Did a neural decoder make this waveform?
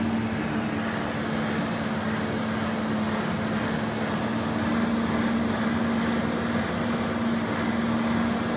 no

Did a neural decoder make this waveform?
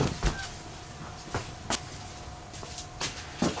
no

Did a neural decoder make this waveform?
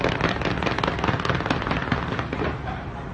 no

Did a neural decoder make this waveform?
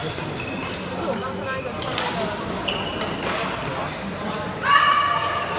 no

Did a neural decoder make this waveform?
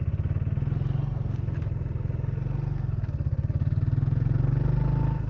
no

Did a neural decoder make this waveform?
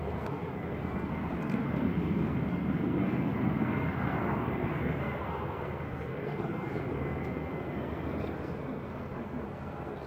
yes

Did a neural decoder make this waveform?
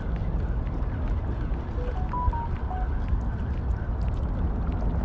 no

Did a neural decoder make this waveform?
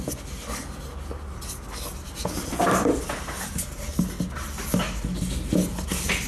no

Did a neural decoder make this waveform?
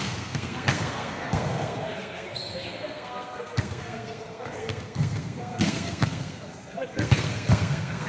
yes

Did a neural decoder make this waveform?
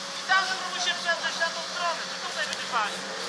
no